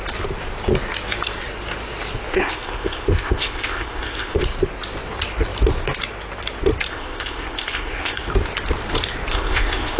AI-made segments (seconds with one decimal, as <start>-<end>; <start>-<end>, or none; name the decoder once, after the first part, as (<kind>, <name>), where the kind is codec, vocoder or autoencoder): 2.3-4.4 (codec, ZipCodec); 6.9-8.3; 9.3-10.0